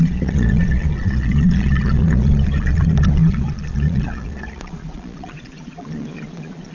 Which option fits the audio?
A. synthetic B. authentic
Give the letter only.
A